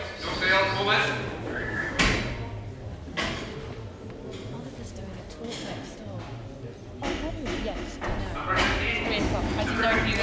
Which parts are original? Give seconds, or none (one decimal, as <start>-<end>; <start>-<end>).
0.0-1.5; 2.0-10.2